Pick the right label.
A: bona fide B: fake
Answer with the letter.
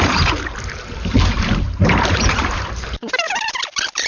B